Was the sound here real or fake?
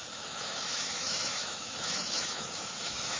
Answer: fake